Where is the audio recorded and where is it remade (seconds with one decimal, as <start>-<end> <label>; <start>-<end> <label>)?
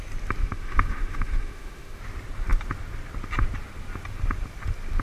0.0-0.4 recorded; 0.4-2.0 remade; 2.0-5.0 recorded